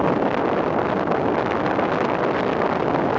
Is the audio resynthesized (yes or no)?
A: no